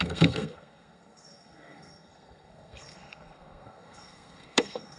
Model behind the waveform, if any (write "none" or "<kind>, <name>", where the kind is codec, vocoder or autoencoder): codec, SNAC